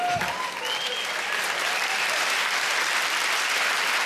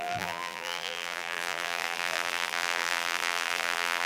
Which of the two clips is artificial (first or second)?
second